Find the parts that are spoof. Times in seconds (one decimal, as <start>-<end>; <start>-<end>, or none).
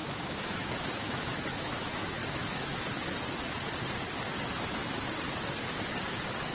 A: 0.0-3.1